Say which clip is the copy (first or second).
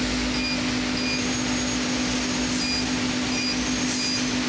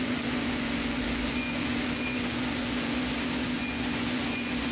second